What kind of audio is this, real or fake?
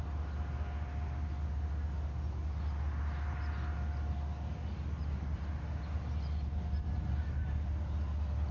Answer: real